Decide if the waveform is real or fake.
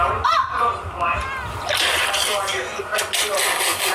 real